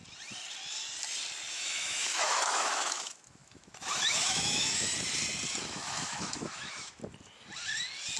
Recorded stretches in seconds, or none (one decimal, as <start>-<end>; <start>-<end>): 0.0-1.5; 4.9-5.6; 7.0-8.2